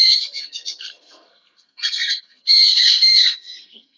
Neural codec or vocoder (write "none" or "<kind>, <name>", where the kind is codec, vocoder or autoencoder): codec, SNAC